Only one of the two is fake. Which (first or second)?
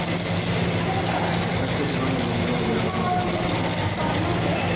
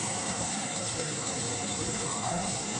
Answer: second